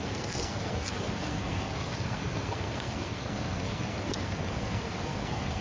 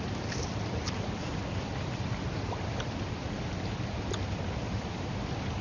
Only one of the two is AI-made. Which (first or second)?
first